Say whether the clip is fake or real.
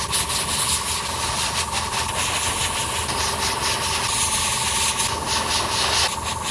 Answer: real